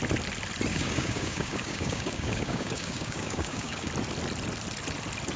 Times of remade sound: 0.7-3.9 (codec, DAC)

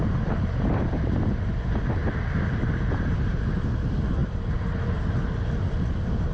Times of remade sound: none